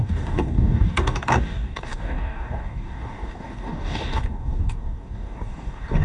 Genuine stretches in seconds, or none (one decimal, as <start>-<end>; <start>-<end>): none